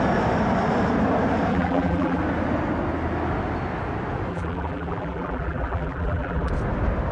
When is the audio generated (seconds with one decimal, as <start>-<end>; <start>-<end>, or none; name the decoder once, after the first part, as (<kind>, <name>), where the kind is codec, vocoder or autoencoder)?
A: 1.5-2.2 (vocoder, BigVGAN v2); 4.3-6.5